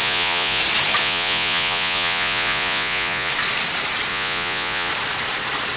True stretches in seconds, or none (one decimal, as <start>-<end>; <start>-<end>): 0.6-1.0; 3.3-4.1; 4.9-5.8